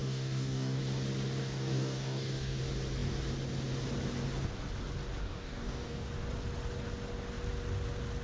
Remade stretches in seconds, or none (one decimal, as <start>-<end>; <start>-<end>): 0.0-0.8; 1.4-2.6; 5.2-6.1